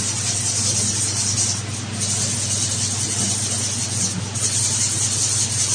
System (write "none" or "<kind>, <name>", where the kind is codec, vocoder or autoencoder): none